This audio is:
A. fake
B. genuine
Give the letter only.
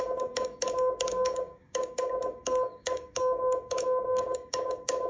A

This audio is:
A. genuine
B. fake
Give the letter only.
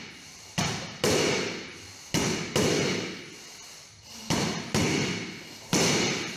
A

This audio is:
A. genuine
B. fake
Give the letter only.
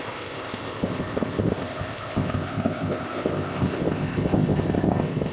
B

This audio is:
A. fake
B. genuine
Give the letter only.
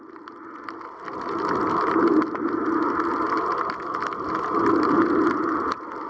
B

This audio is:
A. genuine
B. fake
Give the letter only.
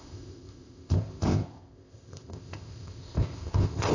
B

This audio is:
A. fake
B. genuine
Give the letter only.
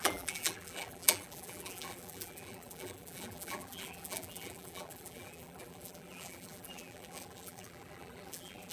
A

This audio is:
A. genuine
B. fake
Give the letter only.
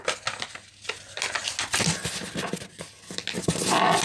A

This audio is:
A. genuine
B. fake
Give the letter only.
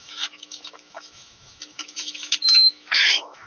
B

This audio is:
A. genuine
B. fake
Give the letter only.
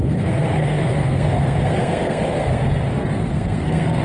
B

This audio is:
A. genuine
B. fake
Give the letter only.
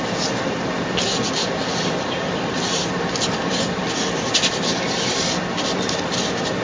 A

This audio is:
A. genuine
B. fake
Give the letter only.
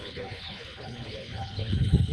B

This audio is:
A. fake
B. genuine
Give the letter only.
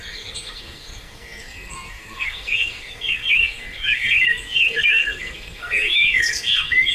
A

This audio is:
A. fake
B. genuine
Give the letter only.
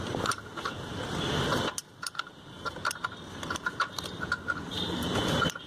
B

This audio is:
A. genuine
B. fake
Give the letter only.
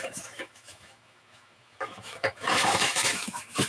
B